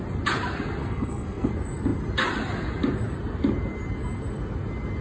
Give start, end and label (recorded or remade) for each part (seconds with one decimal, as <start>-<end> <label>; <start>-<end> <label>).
0.0-0.8 recorded; 0.8-1.5 remade; 1.5-5.0 recorded